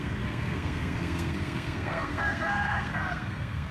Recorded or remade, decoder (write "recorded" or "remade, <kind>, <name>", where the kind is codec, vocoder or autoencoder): remade, codec, SNAC